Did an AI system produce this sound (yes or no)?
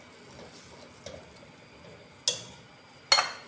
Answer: no